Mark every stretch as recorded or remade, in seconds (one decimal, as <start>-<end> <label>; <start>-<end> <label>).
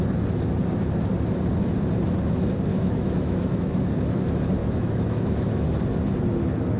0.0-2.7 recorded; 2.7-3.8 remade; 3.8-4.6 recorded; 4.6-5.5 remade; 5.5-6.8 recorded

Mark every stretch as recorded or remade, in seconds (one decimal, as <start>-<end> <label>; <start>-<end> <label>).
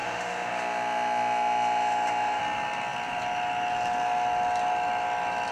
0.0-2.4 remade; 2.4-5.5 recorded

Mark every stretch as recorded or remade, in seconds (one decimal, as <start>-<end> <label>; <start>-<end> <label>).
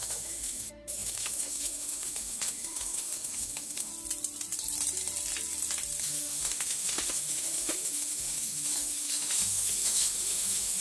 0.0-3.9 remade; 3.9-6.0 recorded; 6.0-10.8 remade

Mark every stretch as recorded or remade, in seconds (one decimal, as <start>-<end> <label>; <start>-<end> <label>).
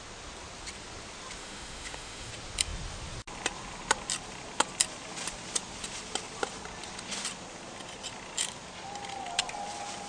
0.0-1.4 recorded; 1.4-2.3 remade; 2.3-10.1 recorded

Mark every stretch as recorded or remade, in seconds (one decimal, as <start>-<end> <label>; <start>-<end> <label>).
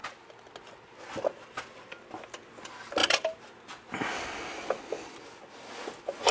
0.0-6.3 recorded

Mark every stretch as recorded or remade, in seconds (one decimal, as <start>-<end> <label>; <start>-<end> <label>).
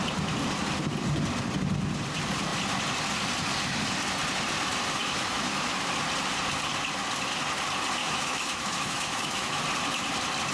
0.0-5.0 recorded; 5.0-5.9 remade; 5.9-8.0 recorded; 8.0-9.6 remade; 9.6-10.5 recorded